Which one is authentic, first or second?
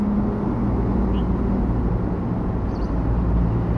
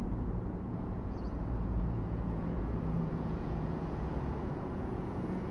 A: first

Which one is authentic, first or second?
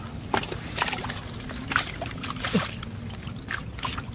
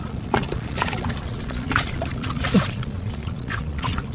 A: first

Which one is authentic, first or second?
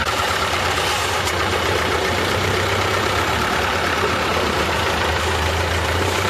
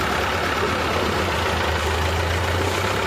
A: second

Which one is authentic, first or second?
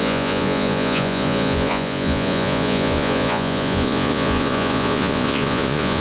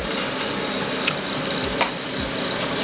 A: second